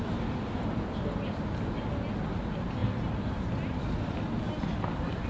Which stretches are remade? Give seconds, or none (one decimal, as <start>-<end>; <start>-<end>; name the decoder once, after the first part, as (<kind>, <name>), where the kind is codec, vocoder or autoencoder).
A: none